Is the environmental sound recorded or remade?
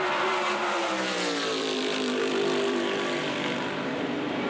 remade